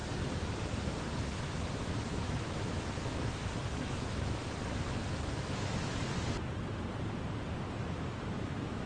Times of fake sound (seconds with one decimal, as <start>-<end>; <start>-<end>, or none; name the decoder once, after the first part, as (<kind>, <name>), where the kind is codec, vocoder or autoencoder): 1.7-6.0 (autoencoder, DAC-VAE); 7.7-8.9